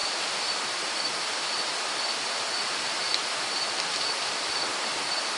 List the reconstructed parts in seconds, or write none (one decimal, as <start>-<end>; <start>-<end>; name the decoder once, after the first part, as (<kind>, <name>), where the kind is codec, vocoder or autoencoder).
none